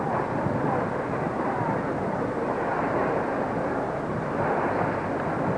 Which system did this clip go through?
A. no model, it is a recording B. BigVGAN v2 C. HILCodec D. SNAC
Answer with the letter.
B